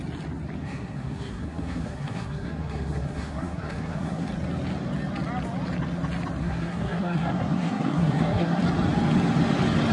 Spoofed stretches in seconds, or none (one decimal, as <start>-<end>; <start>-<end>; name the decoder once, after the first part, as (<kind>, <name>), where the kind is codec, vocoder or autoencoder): 0.6-4.3 (codec, SNAC); 6.4-8.6